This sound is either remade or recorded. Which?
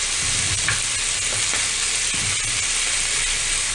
recorded